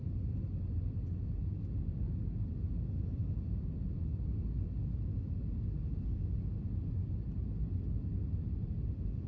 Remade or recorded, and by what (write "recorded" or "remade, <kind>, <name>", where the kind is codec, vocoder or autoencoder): recorded